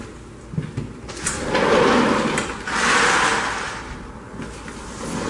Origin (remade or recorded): recorded